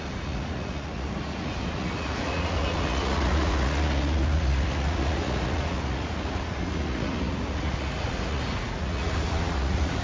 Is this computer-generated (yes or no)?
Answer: yes